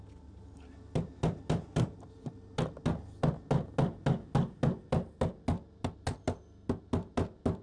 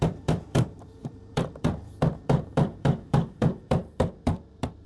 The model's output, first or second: second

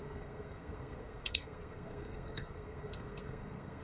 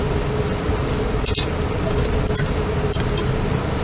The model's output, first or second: first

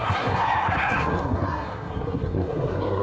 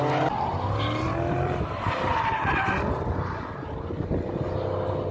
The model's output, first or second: first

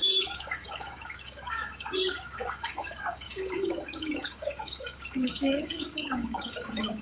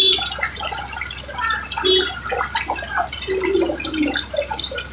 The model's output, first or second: first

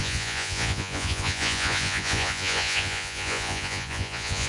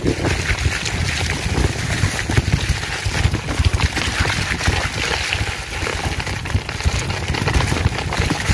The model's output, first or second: first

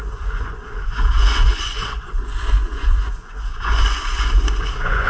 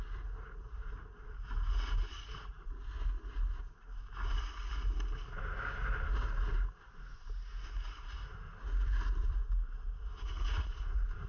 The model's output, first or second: first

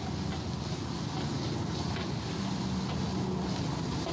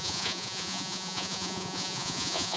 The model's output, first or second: second